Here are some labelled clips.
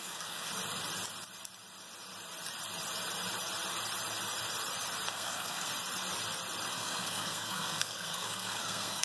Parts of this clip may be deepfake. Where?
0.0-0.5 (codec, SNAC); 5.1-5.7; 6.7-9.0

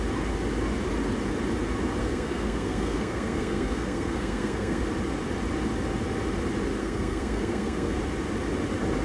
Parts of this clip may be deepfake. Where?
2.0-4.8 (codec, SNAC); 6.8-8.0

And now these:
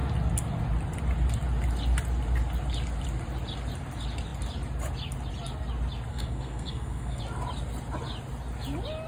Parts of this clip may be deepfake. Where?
6.1-7.2 (codec, SNAC)